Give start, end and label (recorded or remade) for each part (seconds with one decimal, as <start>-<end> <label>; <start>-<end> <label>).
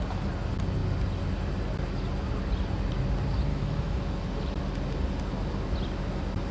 0.0-3.5 recorded; 3.5-4.0 remade; 4.0-6.5 recorded